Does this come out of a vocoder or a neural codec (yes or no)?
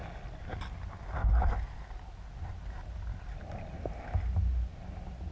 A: no